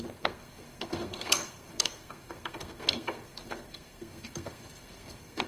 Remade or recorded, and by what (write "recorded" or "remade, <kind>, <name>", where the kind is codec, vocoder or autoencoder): remade, codec, SNAC